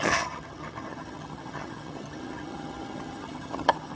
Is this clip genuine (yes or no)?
no